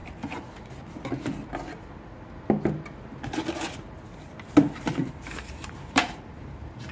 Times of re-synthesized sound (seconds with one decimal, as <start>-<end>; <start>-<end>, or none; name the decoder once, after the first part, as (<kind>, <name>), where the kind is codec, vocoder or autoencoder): 0.0-0.7 (vocoder, BigVGAN v2); 5.0-6.4